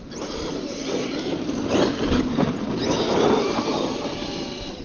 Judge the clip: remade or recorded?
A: recorded